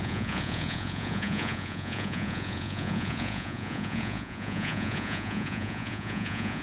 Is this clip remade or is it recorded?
remade